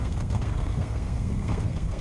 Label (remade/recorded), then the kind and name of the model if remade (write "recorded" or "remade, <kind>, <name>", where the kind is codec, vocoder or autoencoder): remade, codec, SNAC